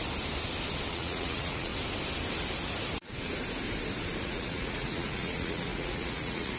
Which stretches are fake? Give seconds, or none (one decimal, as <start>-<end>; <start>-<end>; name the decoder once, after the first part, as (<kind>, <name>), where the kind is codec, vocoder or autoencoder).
0.9-1.7 (vocoder, Vocos); 4.2-6.6